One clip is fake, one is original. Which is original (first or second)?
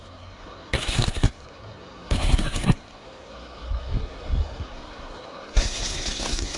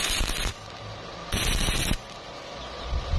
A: second